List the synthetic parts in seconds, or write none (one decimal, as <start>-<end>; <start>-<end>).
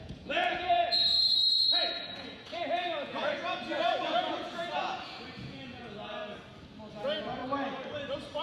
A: 0.0-6.2; 6.9-7.4